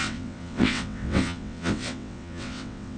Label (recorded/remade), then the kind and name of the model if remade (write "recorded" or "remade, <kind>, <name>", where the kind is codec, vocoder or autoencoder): remade, vocoder, WaveNeXt